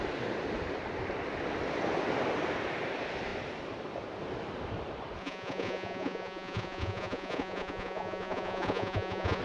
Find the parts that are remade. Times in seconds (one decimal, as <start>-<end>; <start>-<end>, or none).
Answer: 5.2-9.4

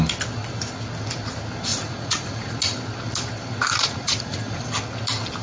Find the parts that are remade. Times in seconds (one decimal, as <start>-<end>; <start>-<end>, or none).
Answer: 1.7-2.6; 3.8-4.6

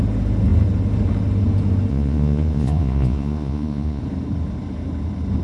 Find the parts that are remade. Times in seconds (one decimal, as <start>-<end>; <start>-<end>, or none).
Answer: 1.9-4.0

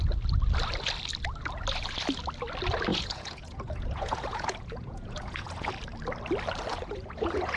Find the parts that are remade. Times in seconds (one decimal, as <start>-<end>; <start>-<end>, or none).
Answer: 2.9-5.7; 6.7-7.6

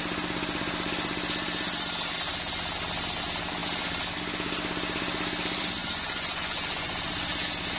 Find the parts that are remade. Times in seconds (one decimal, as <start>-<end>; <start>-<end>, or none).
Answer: 5.8-7.1

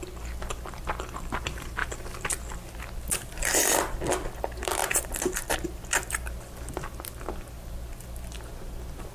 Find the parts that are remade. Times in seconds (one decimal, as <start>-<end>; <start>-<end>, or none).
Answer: none